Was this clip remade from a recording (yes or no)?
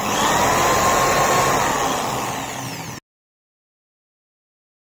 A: no